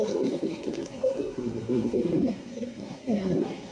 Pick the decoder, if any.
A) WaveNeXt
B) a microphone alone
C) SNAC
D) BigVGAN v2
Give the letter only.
C